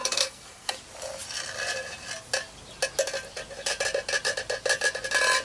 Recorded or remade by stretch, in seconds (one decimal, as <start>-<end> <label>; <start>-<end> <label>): 0.0-0.7 remade; 0.7-5.4 recorded